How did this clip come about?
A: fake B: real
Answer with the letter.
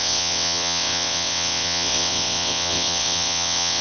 A